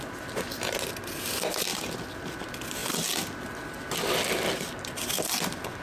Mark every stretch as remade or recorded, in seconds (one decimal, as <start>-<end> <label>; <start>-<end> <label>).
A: 0.0-5.8 recorded